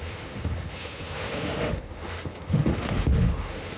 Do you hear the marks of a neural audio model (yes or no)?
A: yes